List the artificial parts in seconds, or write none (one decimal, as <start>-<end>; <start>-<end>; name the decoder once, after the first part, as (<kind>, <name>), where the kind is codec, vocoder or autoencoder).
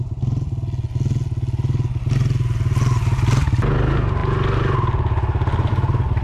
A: none